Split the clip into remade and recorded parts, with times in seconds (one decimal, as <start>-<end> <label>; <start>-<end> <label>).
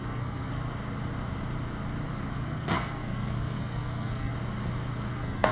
0.0-0.5 remade; 0.5-2.3 recorded; 2.3-4.3 remade; 4.3-5.1 recorded; 5.1-5.5 remade